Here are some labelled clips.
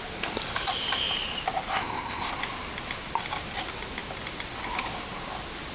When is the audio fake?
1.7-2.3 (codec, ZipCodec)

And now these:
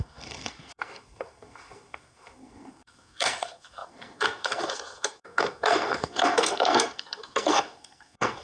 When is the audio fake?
0.0-8.4 (codec, SNAC)

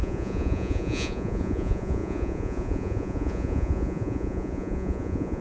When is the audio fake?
0.0-5.4 (vocoder, Vocos)

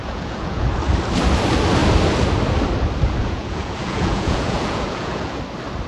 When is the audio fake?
0.0-0.7 (vocoder, Vocos); 3.2-5.4

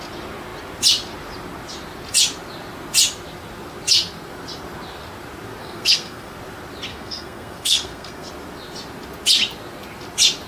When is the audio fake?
5.6-6.3 (codec, SNAC); 6.9-8.3

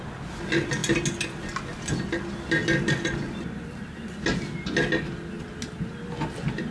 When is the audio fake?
none